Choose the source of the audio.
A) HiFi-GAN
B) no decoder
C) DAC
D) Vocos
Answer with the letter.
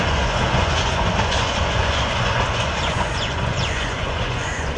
D